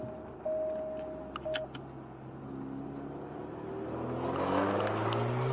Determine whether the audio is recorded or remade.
recorded